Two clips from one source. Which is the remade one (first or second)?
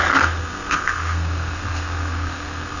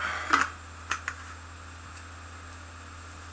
first